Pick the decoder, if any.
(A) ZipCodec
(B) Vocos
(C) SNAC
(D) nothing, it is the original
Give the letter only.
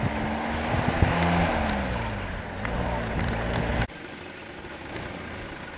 D